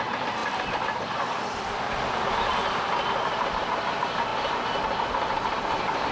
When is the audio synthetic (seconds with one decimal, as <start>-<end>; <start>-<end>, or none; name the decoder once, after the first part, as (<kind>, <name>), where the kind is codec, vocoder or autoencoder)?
0.4-2.3 (vocoder, BigVGAN v2)